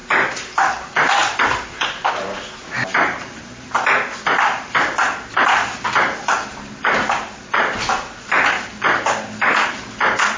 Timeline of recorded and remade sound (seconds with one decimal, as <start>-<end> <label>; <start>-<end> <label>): 0.0-10.4 recorded